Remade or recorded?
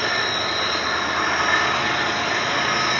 recorded